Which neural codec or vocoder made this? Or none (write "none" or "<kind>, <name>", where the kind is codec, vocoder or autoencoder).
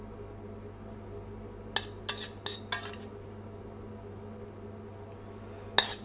none